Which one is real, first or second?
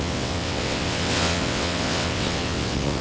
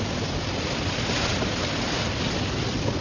second